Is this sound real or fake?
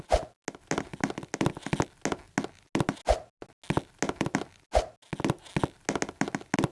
real